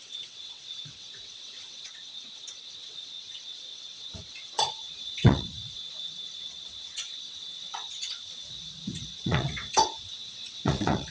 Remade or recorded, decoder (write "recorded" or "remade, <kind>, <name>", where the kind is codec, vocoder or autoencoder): remade, vocoder, WaveNeXt